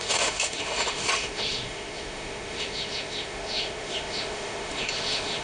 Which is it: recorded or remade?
remade